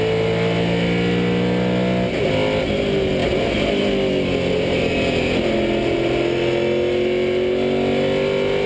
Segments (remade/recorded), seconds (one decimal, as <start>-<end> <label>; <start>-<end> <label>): 0.0-8.7 recorded